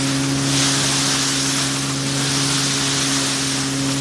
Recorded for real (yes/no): yes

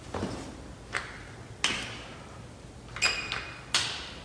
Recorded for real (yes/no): yes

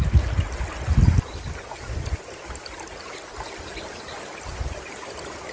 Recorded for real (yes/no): yes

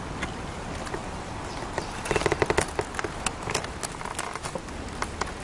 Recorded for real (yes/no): yes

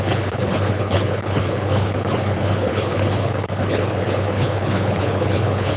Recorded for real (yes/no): no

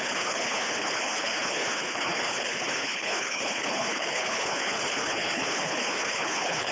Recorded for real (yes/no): no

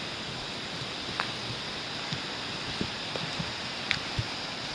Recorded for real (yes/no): yes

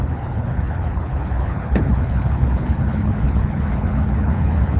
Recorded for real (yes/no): no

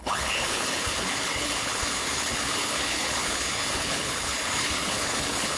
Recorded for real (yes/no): no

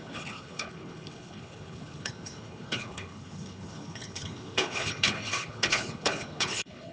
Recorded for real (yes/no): no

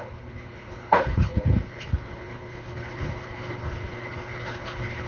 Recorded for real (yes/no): no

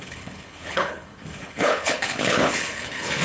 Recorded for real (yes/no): no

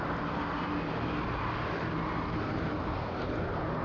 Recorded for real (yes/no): yes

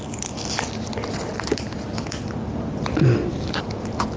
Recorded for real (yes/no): yes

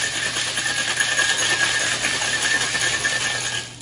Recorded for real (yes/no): yes